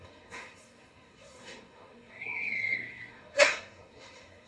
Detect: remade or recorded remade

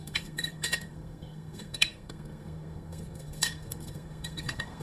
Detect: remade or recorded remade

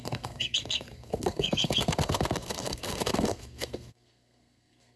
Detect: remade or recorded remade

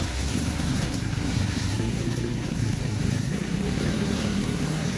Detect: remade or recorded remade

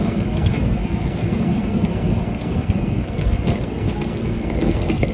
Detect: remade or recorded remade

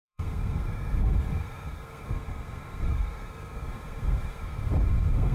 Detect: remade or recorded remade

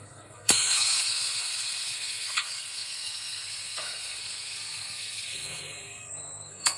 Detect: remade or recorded remade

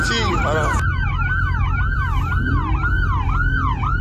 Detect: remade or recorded recorded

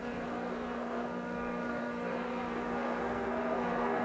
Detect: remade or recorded remade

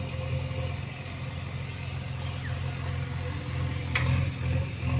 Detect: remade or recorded recorded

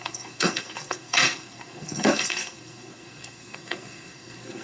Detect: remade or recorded remade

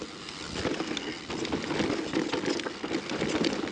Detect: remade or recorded recorded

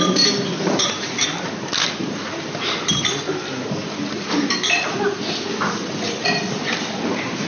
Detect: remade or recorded recorded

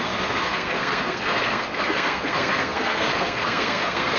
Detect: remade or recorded remade